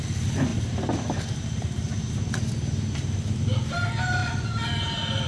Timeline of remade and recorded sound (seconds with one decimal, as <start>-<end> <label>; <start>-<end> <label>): 0.0-0.5 recorded; 0.5-3.4 remade; 3.4-5.3 recorded